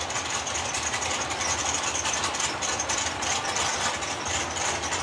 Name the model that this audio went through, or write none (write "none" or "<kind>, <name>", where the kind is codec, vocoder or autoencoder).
none